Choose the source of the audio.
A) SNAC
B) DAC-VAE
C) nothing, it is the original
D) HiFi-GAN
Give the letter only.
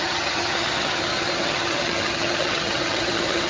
D